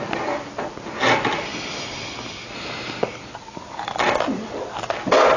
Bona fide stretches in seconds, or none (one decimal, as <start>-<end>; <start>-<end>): 0.0-5.4